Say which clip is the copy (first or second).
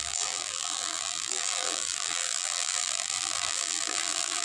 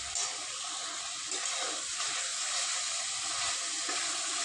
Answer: first